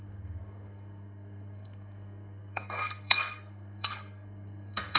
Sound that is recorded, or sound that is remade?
remade